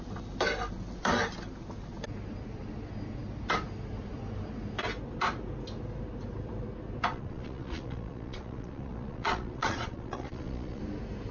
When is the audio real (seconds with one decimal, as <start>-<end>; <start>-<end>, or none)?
0.0-7.1; 10.8-11.3